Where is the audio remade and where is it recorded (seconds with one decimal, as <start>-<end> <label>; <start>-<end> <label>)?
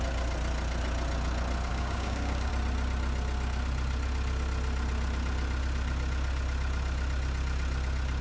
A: 0.0-1.7 recorded; 1.7-2.5 remade; 2.5-8.2 recorded